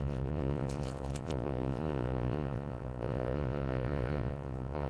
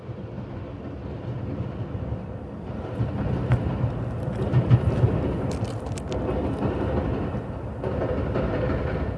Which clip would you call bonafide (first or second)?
second